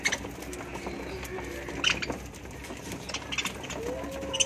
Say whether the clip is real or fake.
real